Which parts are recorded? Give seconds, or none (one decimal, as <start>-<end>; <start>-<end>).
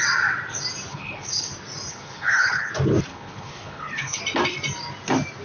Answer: 0.0-0.9; 1.5-1.9; 2.7-3.1; 4.2-5.4